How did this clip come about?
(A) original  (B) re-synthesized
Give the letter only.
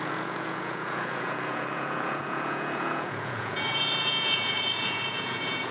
B